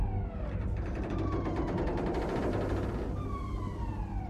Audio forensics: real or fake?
real